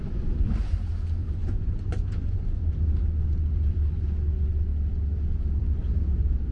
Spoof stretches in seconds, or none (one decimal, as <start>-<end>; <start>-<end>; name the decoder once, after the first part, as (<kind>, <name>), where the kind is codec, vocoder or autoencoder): 1.2-2.7 (vocoder, Vocos)